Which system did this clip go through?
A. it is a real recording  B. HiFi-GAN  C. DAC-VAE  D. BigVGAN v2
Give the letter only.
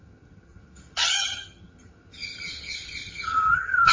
B